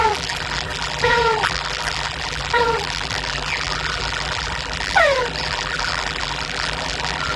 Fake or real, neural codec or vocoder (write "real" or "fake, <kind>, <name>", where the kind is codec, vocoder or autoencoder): fake, vocoder, BigVGAN v2